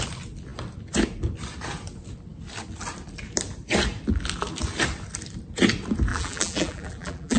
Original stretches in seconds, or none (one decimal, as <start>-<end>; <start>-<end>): 0.0-6.1